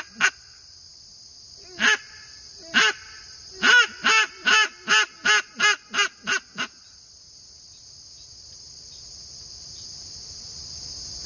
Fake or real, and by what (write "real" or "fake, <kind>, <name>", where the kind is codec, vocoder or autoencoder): real